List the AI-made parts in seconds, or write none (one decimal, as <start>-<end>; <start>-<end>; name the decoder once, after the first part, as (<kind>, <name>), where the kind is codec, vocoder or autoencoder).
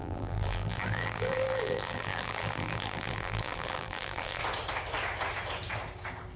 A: 0.0-4.4 (vocoder, BigVGAN v2)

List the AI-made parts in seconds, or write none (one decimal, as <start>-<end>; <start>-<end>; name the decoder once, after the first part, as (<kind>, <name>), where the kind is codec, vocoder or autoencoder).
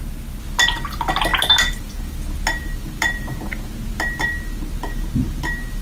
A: none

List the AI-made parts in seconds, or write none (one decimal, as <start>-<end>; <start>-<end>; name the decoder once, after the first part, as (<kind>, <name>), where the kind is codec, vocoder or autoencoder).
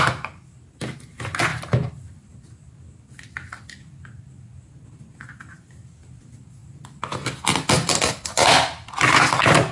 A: 1.5-4.3 (vocoder, BigVGAN v2)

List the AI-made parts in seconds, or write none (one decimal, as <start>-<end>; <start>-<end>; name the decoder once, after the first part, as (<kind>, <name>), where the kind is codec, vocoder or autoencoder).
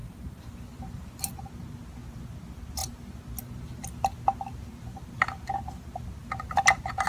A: 0.0-1.1 (vocoder, BigVGAN v2)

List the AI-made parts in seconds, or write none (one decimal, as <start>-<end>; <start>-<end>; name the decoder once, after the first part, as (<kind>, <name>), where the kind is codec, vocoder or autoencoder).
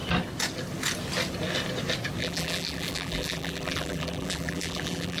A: 2.2-5.2 (vocoder, BigVGAN v2)